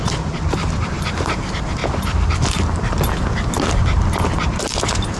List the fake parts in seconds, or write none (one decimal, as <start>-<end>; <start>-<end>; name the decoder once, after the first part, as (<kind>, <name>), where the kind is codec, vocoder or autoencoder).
0.0-1.8 (vocoder, BigVGAN v2); 4.6-5.2